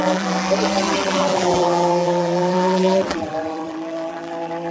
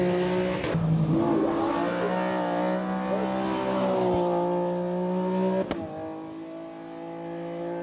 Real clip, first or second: second